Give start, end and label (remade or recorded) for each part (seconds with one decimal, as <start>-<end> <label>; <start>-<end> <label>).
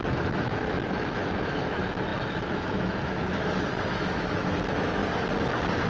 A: 0.0-5.0 remade; 5.0-5.9 recorded